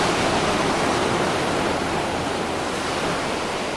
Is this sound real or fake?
real